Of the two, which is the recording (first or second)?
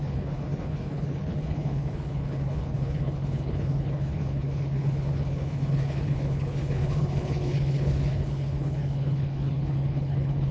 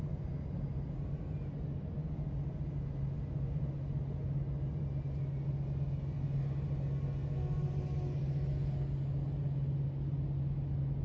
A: second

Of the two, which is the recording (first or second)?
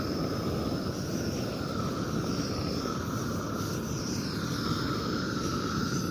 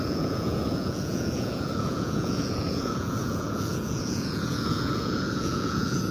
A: first